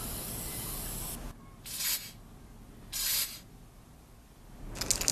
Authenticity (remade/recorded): recorded